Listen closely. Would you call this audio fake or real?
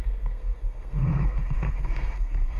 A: fake